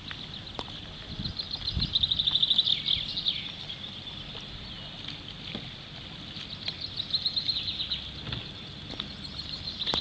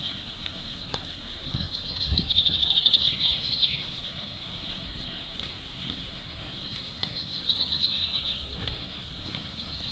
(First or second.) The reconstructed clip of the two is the second